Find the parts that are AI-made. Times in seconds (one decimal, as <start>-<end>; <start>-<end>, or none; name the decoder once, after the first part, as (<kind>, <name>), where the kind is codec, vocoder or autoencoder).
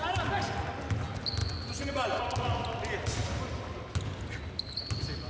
1.4-2.2 (vocoder, Vocos)